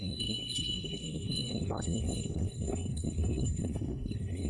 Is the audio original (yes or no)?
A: no